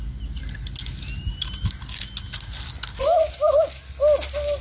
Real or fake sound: real